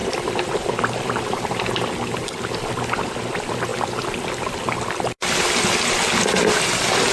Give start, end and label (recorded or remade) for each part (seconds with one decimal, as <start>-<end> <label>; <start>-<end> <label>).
0.0-3.1 remade; 3.1-7.1 recorded